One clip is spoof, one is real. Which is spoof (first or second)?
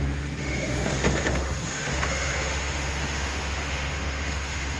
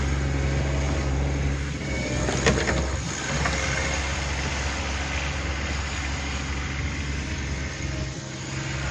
first